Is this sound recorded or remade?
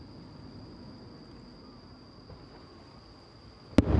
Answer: recorded